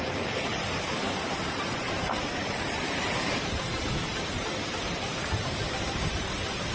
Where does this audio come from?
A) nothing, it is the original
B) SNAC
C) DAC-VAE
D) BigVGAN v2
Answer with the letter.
D